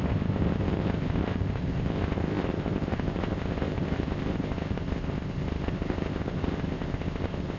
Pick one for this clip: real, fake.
fake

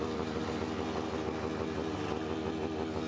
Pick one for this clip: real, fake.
real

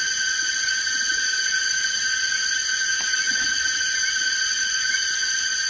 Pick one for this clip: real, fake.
fake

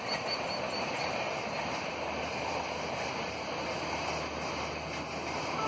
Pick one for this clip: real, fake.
real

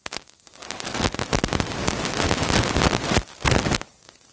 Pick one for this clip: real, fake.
real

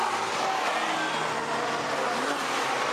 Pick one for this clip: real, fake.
real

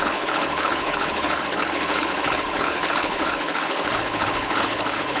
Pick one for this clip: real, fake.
fake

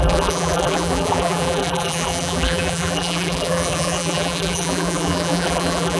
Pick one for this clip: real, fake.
fake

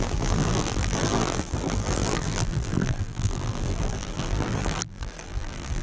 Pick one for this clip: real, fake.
fake